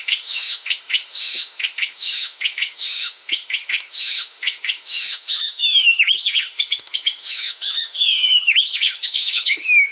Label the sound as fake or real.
fake